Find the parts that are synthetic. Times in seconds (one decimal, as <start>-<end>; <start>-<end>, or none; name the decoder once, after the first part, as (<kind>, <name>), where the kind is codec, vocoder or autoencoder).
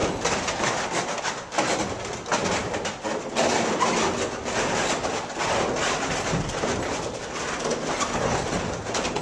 none